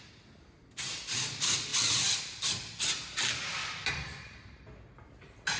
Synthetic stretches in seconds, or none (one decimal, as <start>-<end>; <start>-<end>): none